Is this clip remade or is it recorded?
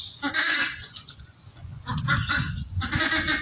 remade